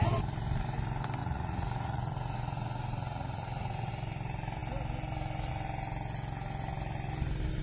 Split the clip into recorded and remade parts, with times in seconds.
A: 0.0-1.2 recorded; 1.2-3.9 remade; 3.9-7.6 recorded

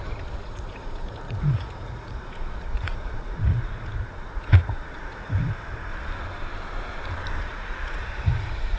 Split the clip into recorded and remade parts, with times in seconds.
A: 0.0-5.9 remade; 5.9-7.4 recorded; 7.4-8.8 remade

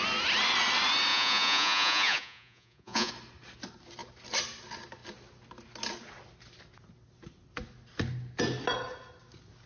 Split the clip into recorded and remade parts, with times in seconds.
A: 0.0-1.1 recorded; 1.1-3.1 remade; 3.1-9.7 recorded